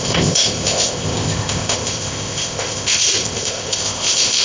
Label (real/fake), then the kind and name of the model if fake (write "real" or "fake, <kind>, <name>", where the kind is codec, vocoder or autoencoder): fake, codec, ZipCodec